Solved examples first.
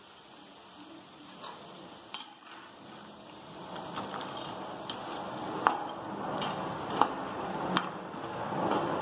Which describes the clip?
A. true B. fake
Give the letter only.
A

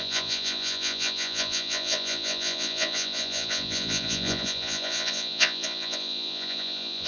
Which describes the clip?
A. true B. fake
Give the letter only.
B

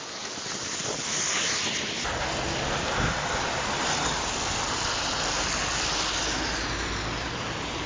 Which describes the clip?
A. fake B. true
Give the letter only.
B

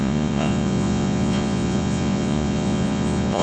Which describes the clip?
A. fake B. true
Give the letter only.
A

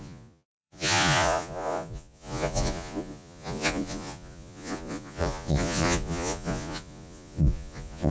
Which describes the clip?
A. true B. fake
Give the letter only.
B